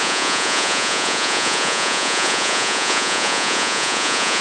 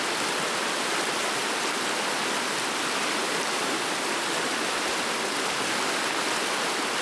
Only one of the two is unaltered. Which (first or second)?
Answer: second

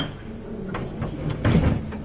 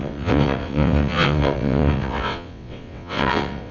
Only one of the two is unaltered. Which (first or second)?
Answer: first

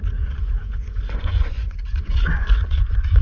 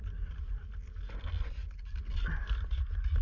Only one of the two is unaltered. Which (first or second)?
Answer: second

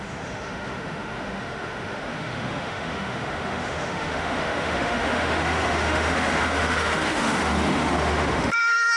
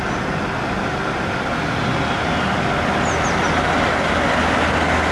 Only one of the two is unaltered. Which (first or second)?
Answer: second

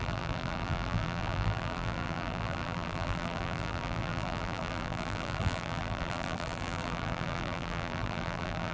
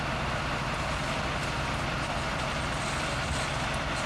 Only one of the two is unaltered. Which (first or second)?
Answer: second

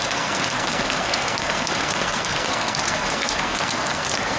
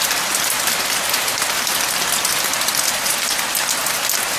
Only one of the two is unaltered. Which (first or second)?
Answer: second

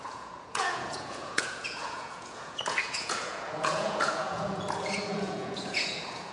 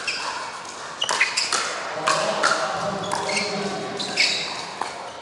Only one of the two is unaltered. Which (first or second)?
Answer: second